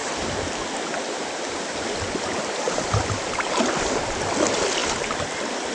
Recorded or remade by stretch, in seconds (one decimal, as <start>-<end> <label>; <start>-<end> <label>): 0.0-5.7 recorded